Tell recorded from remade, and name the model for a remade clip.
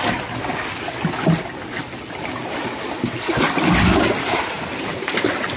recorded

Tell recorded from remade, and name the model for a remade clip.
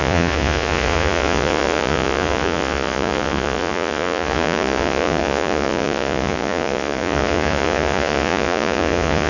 remade, vocoder, Vocos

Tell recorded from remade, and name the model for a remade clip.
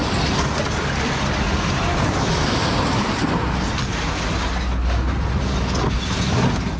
recorded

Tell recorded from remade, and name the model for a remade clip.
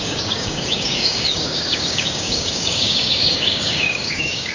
remade, codec, DAC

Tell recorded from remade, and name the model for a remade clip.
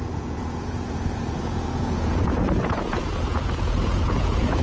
remade, vocoder, Vocos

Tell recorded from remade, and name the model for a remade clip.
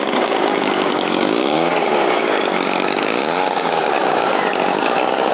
remade, codec, DAC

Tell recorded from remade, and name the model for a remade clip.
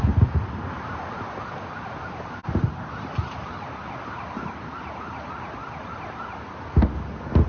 recorded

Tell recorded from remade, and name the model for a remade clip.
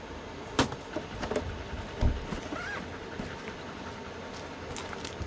recorded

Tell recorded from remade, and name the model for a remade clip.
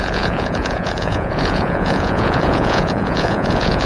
remade, vocoder, Vocos